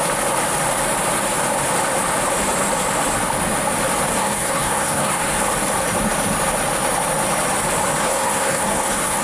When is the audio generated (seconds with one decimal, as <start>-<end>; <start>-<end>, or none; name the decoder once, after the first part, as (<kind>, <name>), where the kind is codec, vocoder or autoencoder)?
4.1-5.4 (codec, SNAC); 8.0-9.2